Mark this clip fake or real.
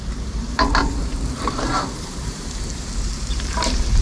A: fake